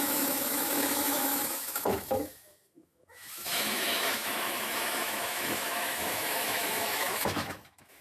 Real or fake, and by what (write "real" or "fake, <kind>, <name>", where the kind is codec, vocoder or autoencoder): fake, autoencoder, DAC-VAE